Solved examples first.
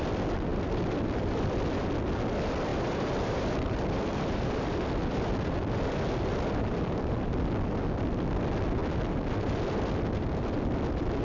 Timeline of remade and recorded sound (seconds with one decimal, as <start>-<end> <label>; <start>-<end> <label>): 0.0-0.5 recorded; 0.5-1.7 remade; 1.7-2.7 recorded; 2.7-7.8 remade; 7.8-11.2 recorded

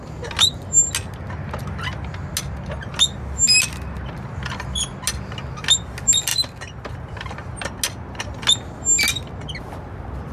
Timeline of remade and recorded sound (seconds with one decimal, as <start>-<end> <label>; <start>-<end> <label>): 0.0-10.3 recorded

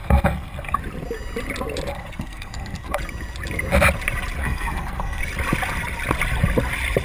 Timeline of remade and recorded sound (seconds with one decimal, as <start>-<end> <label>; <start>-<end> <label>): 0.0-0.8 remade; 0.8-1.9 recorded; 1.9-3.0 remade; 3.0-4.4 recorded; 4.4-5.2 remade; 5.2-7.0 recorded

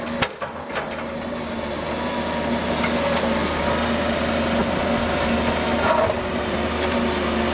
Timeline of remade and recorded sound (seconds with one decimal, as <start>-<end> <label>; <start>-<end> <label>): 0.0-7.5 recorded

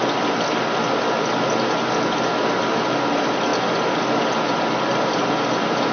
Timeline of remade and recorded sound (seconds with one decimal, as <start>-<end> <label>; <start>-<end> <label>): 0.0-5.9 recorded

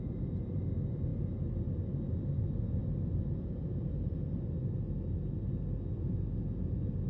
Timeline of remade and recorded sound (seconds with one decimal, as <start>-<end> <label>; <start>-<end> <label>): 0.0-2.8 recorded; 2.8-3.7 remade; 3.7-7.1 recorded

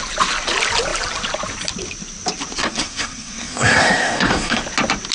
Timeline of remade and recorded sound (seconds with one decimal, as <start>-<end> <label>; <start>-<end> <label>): 0.0-2.6 recorded; 2.6-4.6 remade; 4.6-5.1 recorded